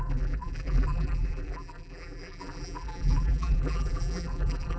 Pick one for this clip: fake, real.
fake